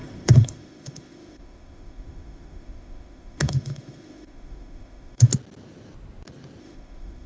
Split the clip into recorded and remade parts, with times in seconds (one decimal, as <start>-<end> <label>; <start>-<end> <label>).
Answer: 0.0-5.3 remade; 5.3-6.6 recorded; 6.6-7.3 remade

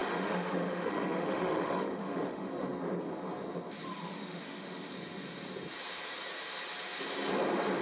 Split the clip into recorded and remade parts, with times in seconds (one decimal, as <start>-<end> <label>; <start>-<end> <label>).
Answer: 0.0-2.5 remade; 2.5-3.9 recorded; 3.9-4.9 remade; 4.9-7.8 recorded